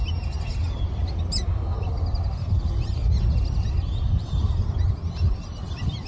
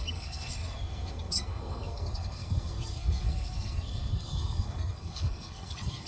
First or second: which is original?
first